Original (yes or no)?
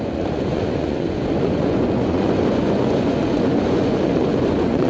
no